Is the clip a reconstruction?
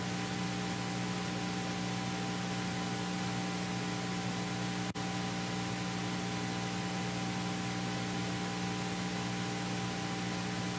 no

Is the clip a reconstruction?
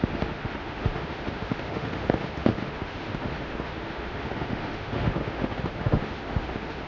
yes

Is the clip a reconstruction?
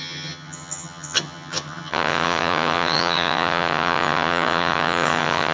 yes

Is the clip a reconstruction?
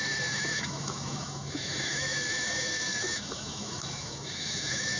yes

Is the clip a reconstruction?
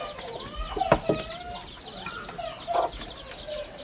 no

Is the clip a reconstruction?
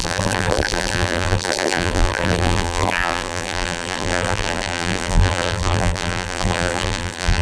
yes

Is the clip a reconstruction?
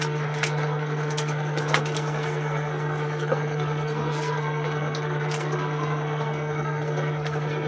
yes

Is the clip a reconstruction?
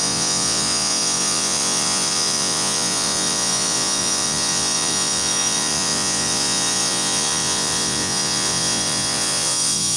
yes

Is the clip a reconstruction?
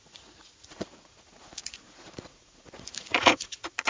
yes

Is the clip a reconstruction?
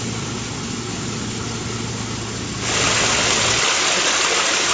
no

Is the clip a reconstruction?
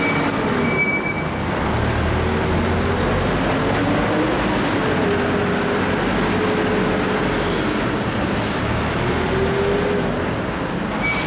no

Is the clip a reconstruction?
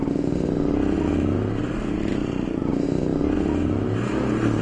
no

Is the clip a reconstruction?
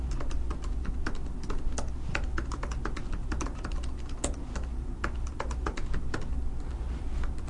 no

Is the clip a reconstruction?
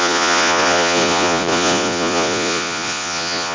yes